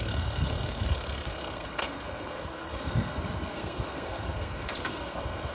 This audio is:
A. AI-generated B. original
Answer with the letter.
A